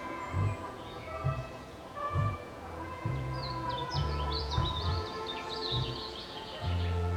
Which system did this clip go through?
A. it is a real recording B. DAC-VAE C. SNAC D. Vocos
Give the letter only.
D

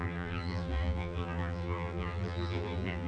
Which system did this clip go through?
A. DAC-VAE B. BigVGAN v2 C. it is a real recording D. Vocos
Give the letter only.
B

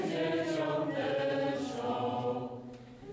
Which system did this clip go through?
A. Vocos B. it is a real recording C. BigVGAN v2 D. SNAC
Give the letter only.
B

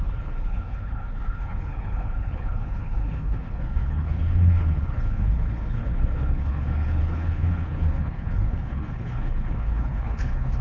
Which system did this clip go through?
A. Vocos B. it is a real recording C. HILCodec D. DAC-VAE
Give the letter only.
C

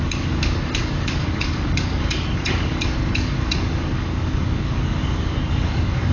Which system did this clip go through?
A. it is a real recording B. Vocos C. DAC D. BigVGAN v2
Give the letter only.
C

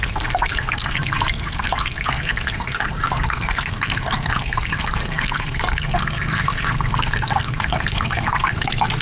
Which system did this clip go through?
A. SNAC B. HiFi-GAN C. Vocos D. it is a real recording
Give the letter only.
A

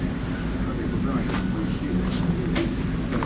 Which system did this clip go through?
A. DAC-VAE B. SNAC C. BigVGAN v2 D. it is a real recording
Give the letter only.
D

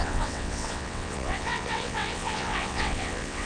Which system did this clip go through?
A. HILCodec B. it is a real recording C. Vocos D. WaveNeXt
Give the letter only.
D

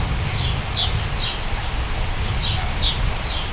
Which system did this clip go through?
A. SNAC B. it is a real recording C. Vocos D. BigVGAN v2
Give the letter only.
B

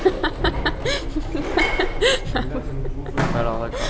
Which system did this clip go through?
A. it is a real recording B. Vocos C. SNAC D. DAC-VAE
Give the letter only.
A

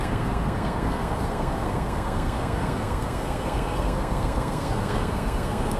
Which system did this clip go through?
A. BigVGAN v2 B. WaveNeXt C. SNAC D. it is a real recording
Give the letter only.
C